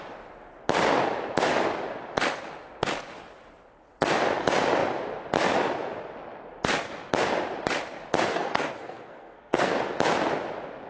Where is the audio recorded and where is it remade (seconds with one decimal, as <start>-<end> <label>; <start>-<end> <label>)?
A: 0.0-8.3 recorded; 8.3-9.7 remade; 9.7-10.9 recorded